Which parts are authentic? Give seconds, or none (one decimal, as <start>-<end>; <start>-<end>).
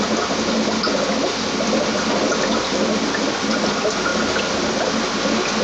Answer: 0.0-4.1; 4.7-5.6